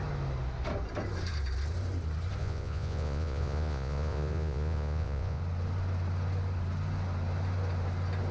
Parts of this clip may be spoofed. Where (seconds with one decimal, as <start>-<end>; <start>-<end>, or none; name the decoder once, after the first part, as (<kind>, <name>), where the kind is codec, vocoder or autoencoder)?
2.4-5.4 (vocoder, Vocos)